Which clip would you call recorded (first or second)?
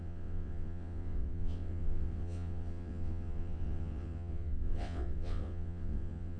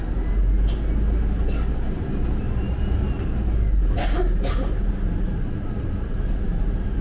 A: second